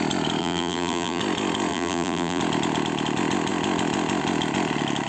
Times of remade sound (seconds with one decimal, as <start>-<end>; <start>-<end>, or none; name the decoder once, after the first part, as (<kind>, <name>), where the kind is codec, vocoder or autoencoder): 0.4-1.2 (vocoder, BigVGAN v2); 1.7-2.4